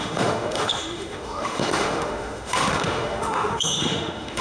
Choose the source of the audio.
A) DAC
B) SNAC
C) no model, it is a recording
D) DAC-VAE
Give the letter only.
D